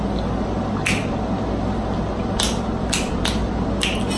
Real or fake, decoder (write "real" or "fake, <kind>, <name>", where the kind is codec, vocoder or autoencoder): real